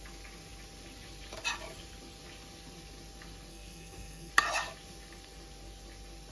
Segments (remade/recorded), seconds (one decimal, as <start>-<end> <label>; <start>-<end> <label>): 0.0-3.5 recorded; 3.5-4.3 remade; 4.3-6.3 recorded